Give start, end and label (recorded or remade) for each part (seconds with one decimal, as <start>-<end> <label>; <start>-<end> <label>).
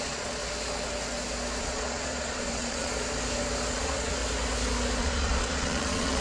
0.0-0.4 remade; 0.4-1.6 recorded; 1.6-2.9 remade; 2.9-3.7 recorded; 3.7-4.2 remade; 4.2-5.0 recorded; 5.0-6.2 remade